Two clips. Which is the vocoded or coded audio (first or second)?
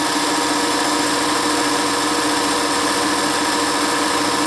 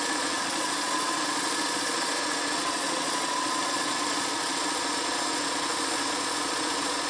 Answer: second